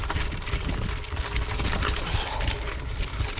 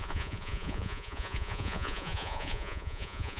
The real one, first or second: first